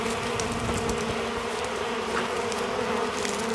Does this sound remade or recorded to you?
recorded